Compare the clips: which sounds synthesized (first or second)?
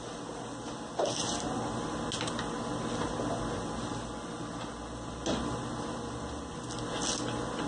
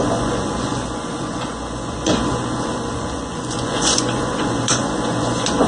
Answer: second